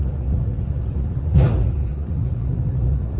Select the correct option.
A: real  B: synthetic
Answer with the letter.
B